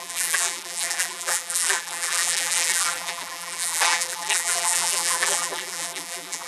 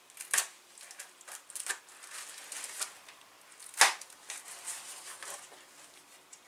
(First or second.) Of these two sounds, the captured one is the second